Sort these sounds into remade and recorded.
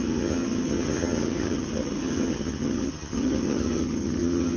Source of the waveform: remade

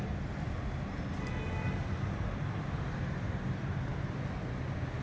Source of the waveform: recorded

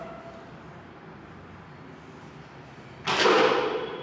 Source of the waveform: recorded